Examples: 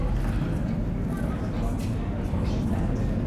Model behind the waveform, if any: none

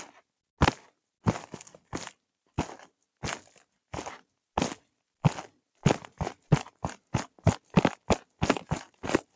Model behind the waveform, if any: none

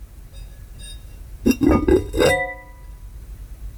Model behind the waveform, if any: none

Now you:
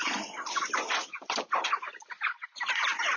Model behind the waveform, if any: none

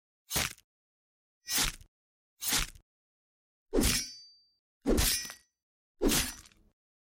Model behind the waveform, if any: none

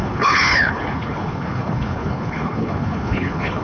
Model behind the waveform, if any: codec, HILCodec